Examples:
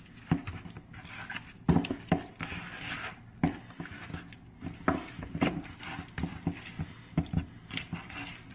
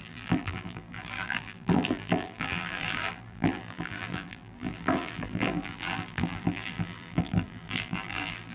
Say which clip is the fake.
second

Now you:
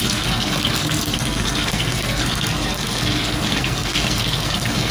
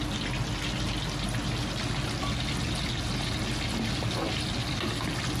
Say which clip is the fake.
first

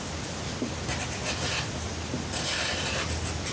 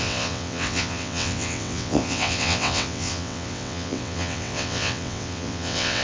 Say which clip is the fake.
second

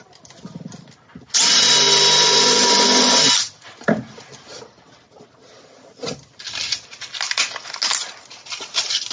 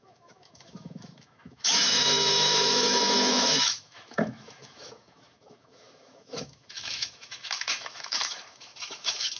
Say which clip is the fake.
second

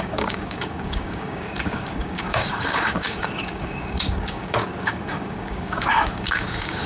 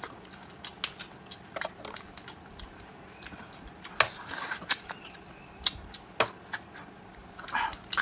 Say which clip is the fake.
first